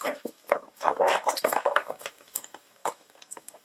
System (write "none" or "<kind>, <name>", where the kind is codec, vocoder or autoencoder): codec, DAC